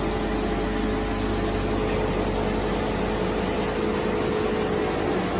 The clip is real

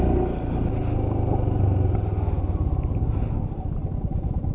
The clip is real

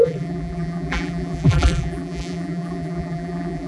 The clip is fake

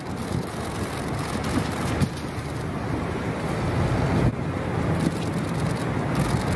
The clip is real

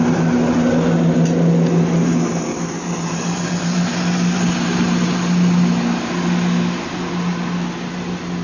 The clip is real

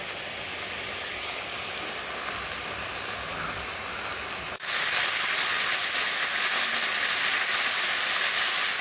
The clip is real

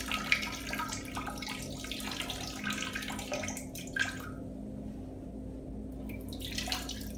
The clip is real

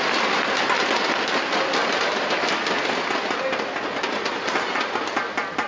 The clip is real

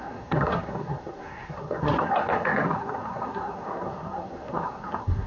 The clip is fake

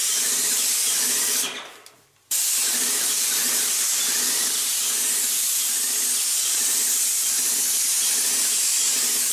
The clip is real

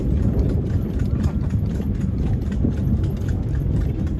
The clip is real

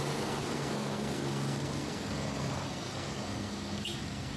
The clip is fake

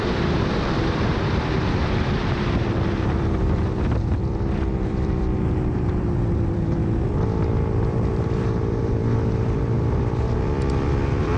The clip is fake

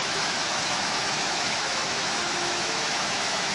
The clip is fake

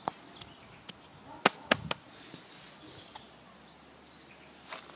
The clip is real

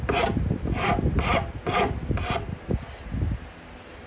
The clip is real